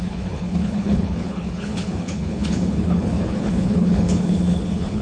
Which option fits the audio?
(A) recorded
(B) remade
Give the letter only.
B